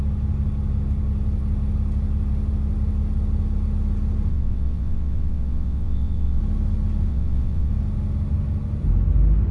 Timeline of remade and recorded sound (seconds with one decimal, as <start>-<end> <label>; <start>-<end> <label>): 0.0-4.3 recorded; 4.3-6.4 remade; 6.4-7.1 recorded; 7.1-7.7 remade; 7.7-9.5 recorded